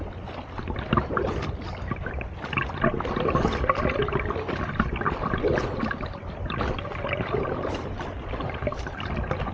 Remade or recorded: recorded